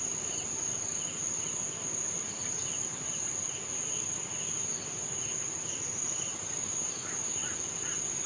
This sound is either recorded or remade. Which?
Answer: recorded